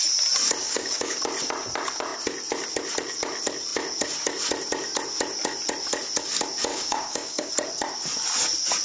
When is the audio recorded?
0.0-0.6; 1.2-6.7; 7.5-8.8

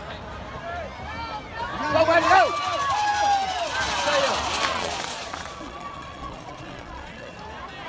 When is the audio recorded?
0.0-4.7; 7.3-7.9

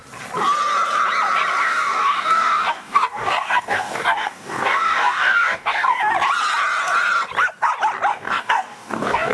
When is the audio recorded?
0.0-1.6; 6.0-8.1

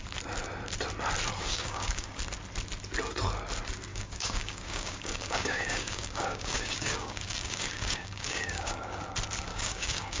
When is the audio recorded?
0.0-1.4; 2.2-3.9; 9.0-9.5

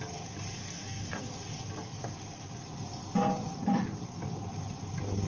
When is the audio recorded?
0.0-0.6; 1.3-5.3

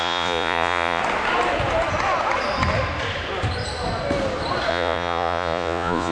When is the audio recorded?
1.0-4.7

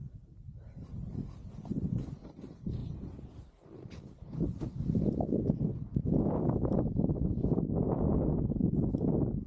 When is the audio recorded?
0.0-9.5